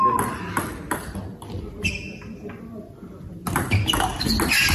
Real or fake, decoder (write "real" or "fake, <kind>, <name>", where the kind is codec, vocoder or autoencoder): real